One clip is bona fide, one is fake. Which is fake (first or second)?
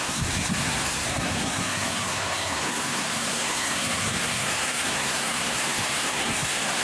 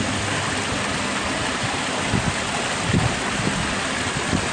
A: first